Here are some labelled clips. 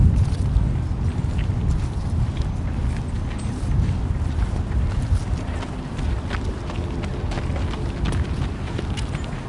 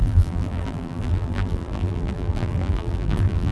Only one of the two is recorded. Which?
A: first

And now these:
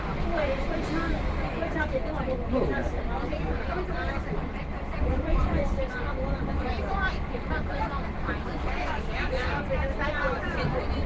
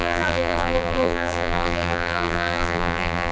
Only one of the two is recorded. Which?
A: first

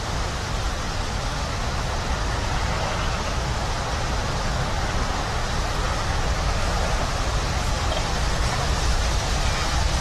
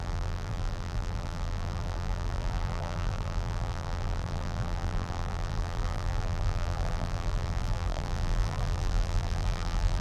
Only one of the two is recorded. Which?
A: first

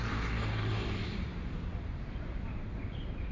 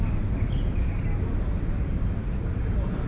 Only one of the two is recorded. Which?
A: second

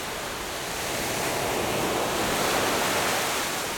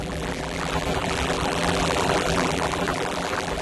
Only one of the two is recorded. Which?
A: first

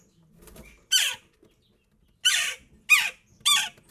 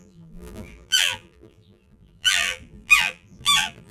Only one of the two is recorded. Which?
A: first